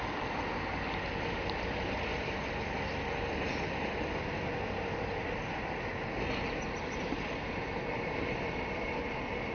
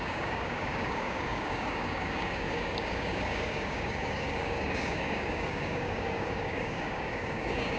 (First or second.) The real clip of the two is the first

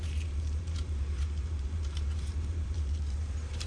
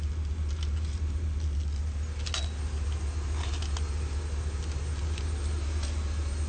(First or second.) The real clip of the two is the second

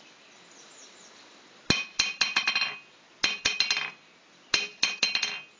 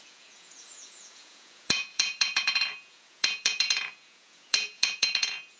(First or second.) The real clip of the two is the first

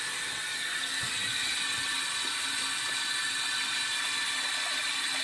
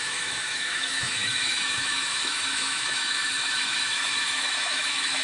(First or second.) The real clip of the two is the first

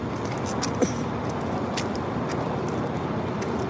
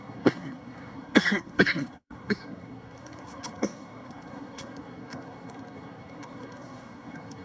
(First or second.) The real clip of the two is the first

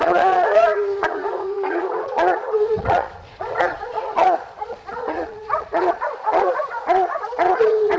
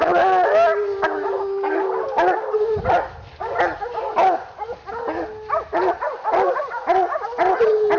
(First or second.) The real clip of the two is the second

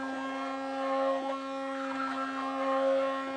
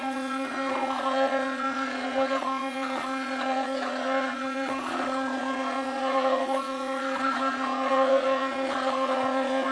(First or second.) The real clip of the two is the first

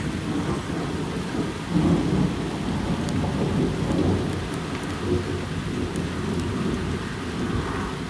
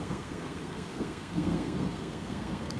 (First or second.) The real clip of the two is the first